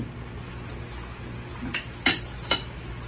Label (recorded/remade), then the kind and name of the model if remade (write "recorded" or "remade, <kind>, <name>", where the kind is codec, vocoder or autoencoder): recorded